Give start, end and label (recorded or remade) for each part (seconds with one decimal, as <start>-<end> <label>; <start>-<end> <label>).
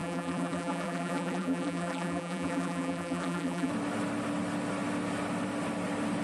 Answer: 0.0-3.7 remade; 3.7-6.2 recorded